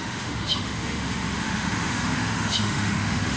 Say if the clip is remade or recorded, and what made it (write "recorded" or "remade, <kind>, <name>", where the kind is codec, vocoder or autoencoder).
remade, autoencoder, DAC-VAE